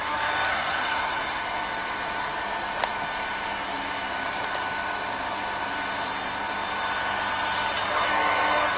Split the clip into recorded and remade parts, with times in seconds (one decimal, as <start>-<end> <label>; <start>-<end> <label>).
0.0-0.5 recorded; 0.5-1.4 remade; 1.4-8.8 recorded